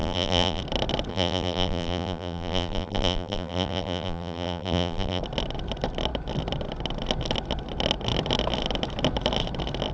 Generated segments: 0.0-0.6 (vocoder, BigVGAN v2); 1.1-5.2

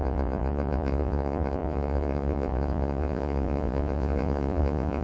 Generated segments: 0.0-5.0 (vocoder, Vocos)

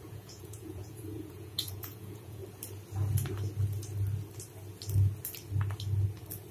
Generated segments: 0.0-2.4 (vocoder, Vocos)

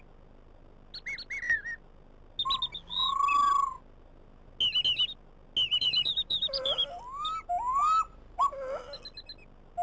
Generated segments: 5.7-7.0 (vocoder, BigVGAN v2); 7.7-8.4